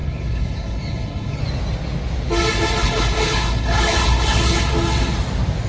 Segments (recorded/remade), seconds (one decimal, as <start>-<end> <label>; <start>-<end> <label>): 0.0-1.4 remade; 1.4-2.8 recorded; 2.8-4.6 remade; 4.6-5.7 recorded